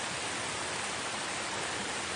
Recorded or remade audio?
recorded